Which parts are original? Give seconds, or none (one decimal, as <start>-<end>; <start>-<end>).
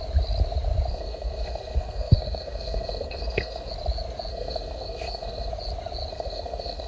0.0-0.9; 3.7-4.3; 5.5-6.1